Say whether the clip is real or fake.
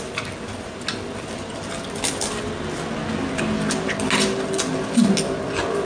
real